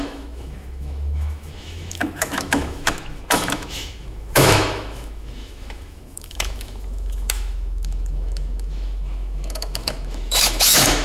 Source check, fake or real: fake